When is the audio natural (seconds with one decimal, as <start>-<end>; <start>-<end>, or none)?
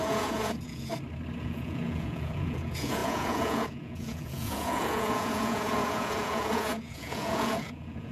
0.9-1.4